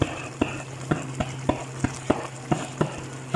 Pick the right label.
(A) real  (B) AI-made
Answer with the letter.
A